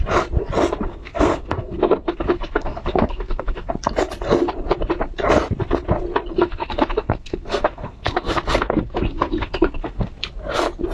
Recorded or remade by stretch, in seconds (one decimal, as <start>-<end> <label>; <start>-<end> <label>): 0.0-0.9 recorded; 0.9-3.7 remade; 3.7-6.4 recorded; 6.4-10.1 remade; 10.1-10.9 recorded